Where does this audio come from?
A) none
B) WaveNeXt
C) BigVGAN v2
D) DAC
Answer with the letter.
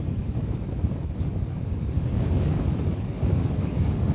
D